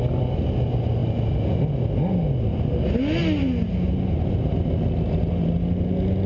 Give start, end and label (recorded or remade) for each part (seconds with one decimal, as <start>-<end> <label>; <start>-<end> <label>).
0.0-6.3 recorded